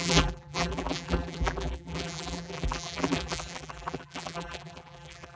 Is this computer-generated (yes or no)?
yes